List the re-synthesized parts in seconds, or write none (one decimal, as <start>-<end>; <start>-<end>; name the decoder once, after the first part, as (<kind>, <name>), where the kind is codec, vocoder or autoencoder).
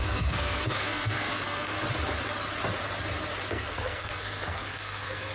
0.0-1.8 (codec, SNAC); 3.5-5.3